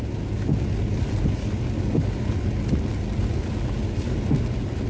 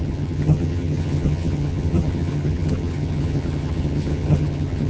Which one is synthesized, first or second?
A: second